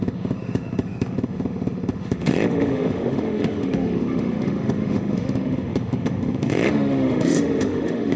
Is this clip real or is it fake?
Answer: fake